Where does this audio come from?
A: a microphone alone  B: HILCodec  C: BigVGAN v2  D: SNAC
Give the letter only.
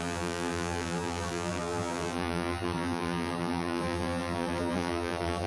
C